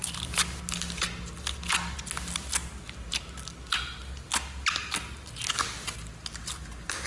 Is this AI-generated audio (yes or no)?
no